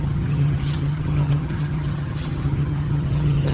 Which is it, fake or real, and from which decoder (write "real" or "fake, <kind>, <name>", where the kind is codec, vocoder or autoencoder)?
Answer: fake, vocoder, HiFi-GAN